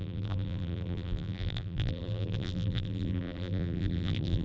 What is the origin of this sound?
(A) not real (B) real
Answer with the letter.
A